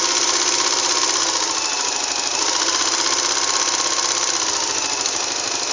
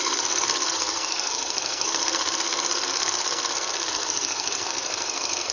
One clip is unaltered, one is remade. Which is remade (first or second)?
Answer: second